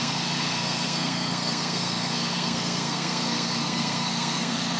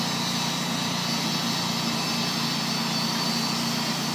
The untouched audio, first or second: second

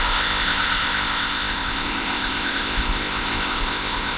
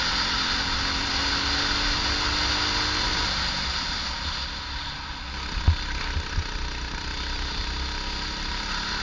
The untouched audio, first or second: second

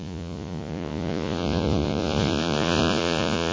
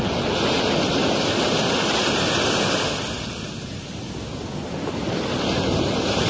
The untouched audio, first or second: second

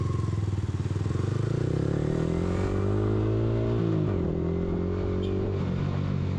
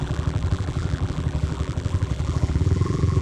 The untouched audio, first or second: first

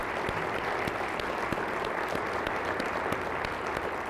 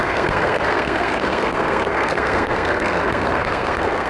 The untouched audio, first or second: first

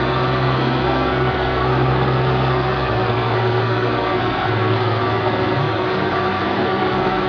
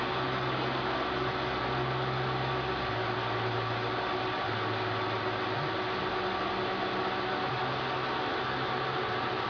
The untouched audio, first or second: second